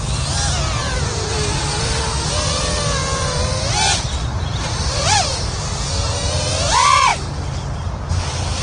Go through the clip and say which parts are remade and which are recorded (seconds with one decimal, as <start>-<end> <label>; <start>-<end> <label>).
0.0-0.8 recorded; 0.8-2.1 remade; 2.1-3.0 recorded; 3.0-5.9 remade; 5.9-7.1 recorded; 7.1-8.1 remade; 8.1-8.6 recorded